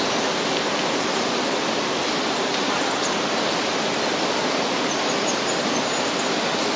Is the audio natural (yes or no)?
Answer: yes